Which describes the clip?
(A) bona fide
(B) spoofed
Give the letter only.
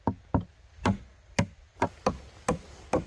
A